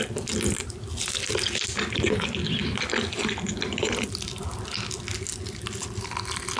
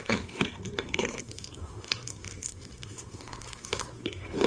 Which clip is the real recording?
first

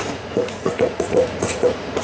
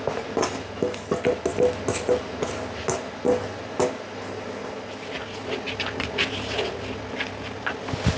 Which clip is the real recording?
second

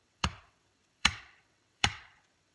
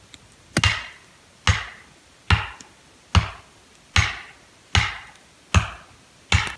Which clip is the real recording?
second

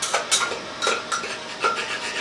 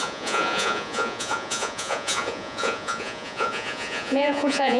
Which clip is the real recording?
first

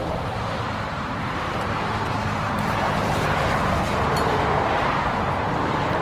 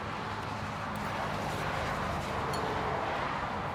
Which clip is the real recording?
second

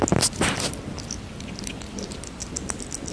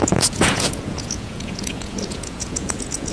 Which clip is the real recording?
first